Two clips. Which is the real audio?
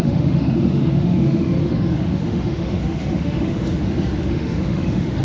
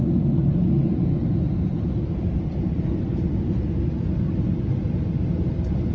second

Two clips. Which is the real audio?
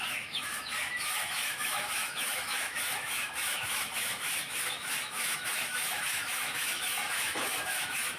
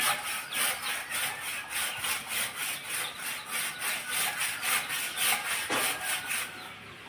second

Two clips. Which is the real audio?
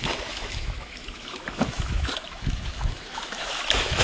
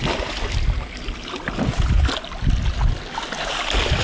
second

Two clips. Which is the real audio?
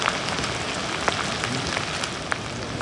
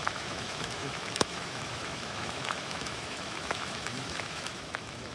first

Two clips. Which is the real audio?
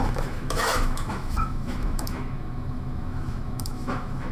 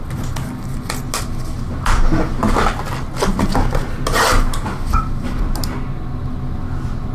second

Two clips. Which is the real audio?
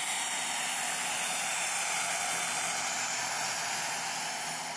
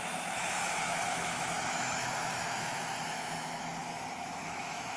first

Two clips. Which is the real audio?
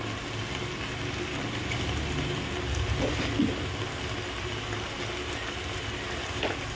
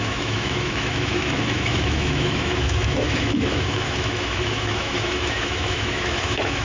first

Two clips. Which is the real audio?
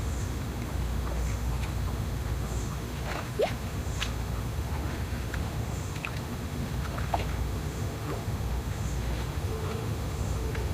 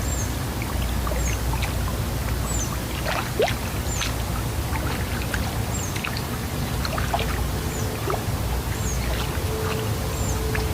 second